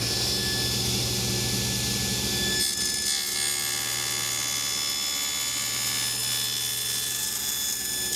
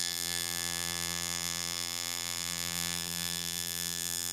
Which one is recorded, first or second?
first